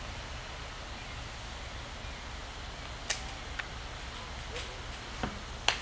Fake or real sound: real